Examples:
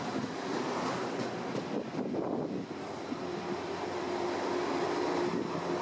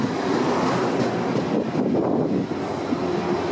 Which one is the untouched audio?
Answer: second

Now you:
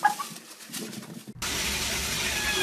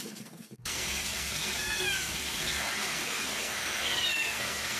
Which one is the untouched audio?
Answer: first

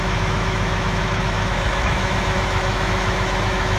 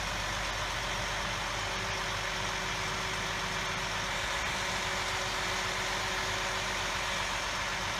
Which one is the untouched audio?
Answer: second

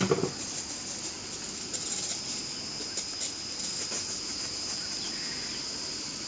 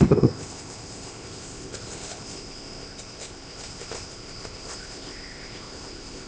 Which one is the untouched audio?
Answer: first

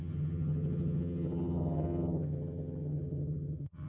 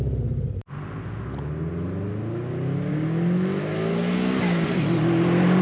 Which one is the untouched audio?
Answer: second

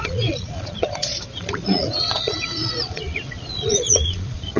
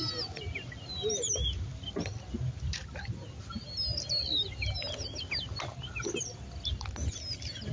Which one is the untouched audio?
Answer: second